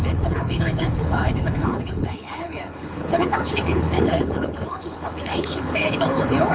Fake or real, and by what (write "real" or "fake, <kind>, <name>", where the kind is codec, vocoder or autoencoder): fake, codec, HILCodec